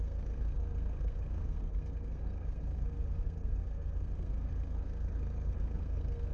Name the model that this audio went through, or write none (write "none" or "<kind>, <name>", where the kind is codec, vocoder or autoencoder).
codec, SNAC